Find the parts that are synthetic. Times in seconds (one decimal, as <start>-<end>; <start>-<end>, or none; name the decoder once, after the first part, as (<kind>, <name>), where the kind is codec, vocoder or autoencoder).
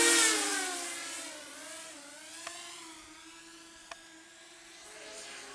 none